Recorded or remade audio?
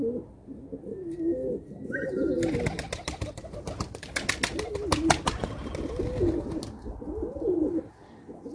recorded